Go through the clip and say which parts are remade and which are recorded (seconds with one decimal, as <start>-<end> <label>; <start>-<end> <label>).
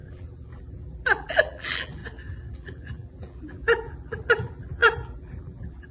0.0-2.0 remade; 2.0-2.5 recorded; 2.5-5.9 remade